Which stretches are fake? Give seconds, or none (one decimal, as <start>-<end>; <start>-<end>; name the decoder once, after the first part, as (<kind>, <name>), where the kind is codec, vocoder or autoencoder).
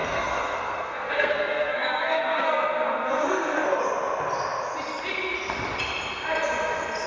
0.0-3.8 (codec, SNAC)